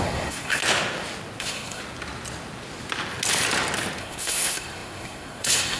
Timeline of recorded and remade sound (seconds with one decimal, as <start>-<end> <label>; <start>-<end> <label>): 0.0-0.6 remade; 0.6-1.4 recorded; 1.4-1.8 remade; 1.8-4.0 recorded; 4.0-5.8 remade